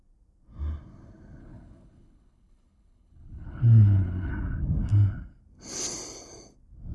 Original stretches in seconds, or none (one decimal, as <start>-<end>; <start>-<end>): 0.0-1.4; 4.3-6.9